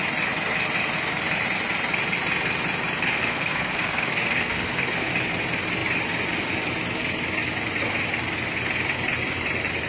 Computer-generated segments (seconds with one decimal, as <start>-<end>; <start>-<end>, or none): 3.1-5.1